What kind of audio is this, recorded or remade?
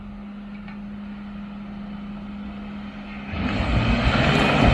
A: recorded